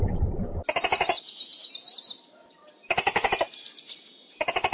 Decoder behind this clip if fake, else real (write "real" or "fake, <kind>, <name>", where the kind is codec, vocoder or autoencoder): real